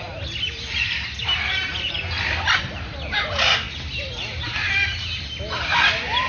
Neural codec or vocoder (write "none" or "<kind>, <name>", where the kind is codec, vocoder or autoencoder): none